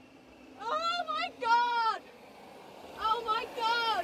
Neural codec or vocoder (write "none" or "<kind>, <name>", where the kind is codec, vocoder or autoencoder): none